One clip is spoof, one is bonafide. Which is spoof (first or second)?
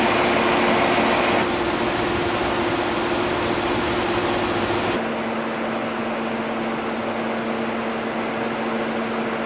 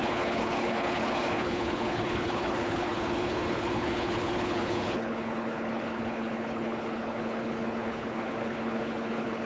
second